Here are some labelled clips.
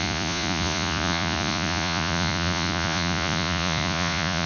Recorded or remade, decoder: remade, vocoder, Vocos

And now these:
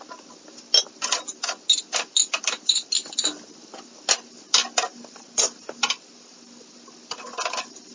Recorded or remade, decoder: recorded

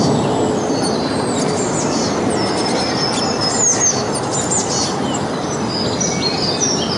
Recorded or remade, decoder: recorded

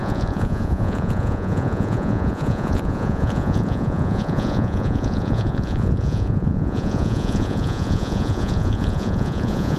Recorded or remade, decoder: remade, vocoder, Vocos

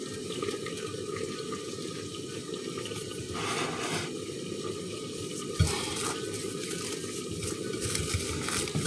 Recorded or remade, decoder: recorded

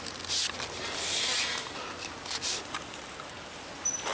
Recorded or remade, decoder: recorded